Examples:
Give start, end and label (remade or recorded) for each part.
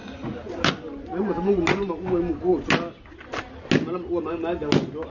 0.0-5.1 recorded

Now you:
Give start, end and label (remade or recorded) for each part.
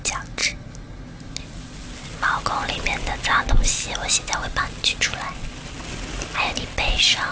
0.0-7.3 recorded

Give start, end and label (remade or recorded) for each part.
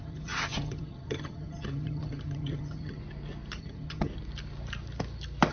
0.0-3.0 remade; 3.0-3.6 recorded; 3.6-4.1 remade; 4.1-5.5 recorded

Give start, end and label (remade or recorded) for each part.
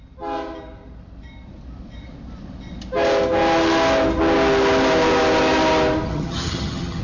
0.0-6.1 recorded; 6.1-7.0 remade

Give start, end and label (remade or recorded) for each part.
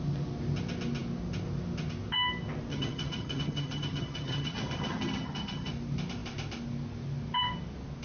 0.0-2.7 recorded; 2.7-5.7 remade; 5.7-8.0 recorded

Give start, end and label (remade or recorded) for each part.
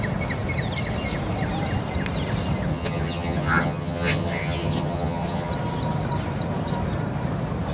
0.0-2.7 recorded; 2.7-5.5 remade; 5.5-7.7 recorded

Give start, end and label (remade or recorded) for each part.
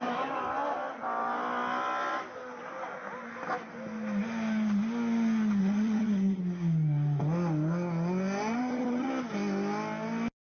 0.0-5.6 recorded; 5.6-6.4 remade; 6.4-8.6 recorded; 8.6-9.1 remade; 9.1-10.5 recorded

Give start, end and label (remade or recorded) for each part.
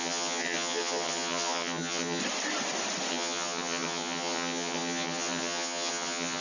0.0-2.2 remade; 2.2-3.1 recorded; 3.1-6.4 remade